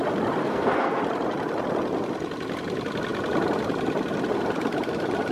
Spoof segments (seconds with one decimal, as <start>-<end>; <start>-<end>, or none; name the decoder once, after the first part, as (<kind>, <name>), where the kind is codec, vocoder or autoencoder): 0.4-1.0 (codec, SNAC)